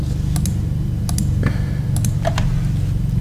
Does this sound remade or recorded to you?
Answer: recorded